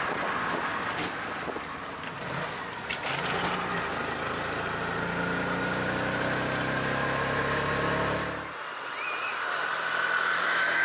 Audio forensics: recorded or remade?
recorded